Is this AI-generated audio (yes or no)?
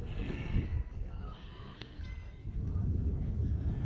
yes